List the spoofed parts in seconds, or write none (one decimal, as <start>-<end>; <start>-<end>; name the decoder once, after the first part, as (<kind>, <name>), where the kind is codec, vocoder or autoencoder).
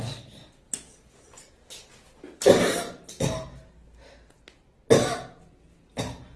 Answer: none